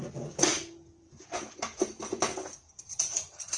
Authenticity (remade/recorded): remade